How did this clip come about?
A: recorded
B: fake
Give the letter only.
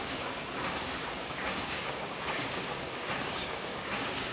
B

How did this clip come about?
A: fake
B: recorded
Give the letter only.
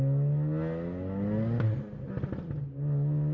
B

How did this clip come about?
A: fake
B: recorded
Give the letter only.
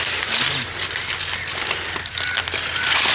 B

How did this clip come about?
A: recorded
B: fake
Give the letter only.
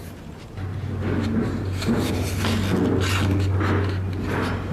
A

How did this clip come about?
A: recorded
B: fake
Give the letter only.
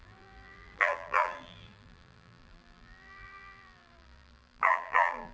B